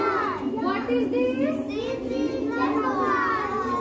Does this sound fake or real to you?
real